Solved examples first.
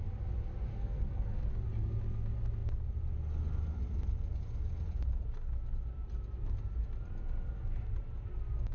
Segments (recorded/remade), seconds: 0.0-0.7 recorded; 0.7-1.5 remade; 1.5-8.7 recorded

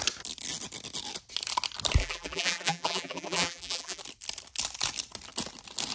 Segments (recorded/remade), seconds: 0.0-2.0 recorded; 2.0-4.0 remade; 4.0-5.9 recorded

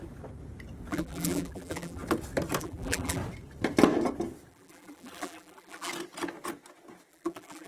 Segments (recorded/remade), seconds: 0.0-0.9 recorded; 0.9-2.0 remade; 2.0-2.6 recorded; 2.6-3.2 remade; 3.2-4.5 recorded; 4.5-5.9 remade; 5.9-7.1 recorded; 7.1-7.7 remade